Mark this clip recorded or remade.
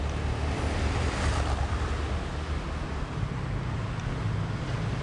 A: recorded